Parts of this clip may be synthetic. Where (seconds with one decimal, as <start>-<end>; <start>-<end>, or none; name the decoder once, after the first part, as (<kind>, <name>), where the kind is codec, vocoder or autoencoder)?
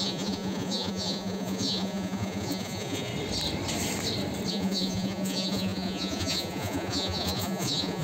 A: 0.0-3.1 (vocoder, Vocos); 4.5-8.0